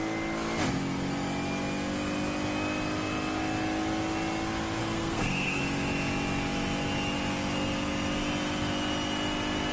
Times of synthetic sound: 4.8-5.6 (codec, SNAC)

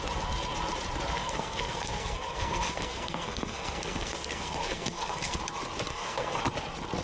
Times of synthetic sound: 1.2-5.4 (codec, SNAC); 5.9-6.4

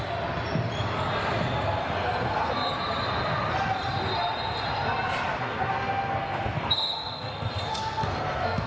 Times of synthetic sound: 1.8-2.5 (codec, SNAC); 5.3-8.7

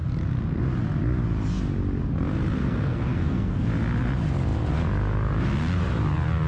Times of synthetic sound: 2.6-3.7 (codec, SNAC)

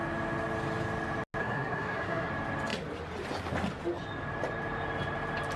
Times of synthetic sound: 1.4-2.3 (codec, SNAC)

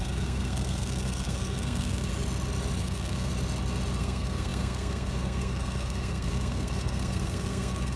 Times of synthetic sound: 0.0-2.1 (codec, SNAC); 2.8-3.3; 4.0-8.0